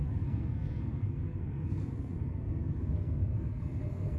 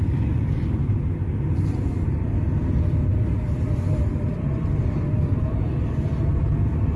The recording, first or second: second